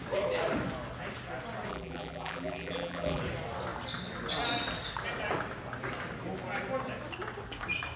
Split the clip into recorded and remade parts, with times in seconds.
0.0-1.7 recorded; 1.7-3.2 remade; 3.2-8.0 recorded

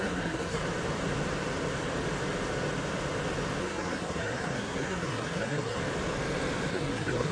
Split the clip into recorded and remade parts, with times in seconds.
0.0-0.6 remade; 0.6-3.6 recorded; 3.6-5.8 remade; 5.8-6.7 recorded; 6.7-7.3 remade